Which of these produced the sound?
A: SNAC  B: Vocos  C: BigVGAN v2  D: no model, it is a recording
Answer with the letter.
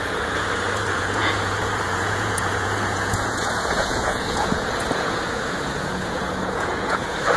B